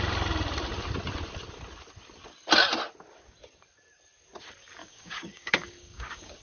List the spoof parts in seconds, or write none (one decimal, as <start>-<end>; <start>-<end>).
4.8-6.4